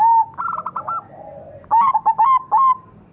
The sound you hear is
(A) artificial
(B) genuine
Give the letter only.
B